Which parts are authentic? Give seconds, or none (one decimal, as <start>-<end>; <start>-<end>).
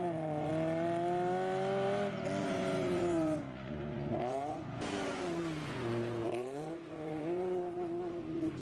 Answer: 0.5-2.4